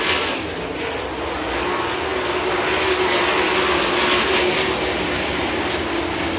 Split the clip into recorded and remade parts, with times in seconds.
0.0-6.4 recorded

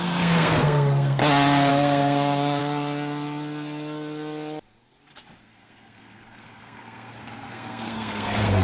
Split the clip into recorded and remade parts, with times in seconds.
0.0-1.2 remade; 1.2-1.7 recorded; 1.7-2.6 remade; 2.6-5.4 recorded; 5.4-8.6 remade

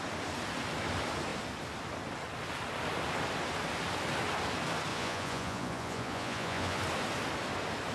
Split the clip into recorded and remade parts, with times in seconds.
0.0-4.9 recorded; 4.9-6.8 remade; 6.8-7.9 recorded

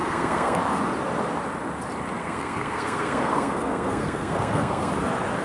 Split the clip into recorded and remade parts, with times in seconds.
0.0-0.6 remade; 0.6-2.2 recorded; 2.2-4.9 remade; 4.9-5.4 recorded